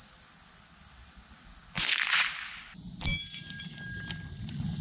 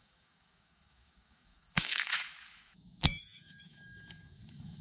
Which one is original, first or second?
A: first